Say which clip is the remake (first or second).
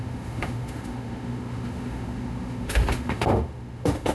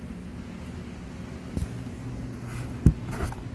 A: first